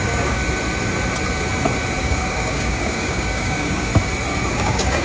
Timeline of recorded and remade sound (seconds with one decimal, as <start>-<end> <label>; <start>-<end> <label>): 0.0-0.4 remade; 0.4-2.0 recorded; 2.0-3.9 remade; 3.9-4.5 recorded; 4.5-5.0 remade